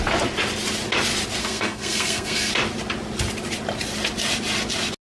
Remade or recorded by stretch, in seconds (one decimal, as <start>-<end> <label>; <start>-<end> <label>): 0.0-1.4 recorded; 1.4-2.5 remade; 2.5-5.0 recorded